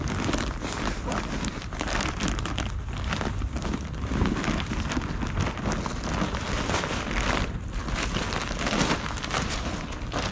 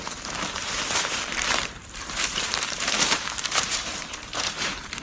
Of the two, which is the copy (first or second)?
second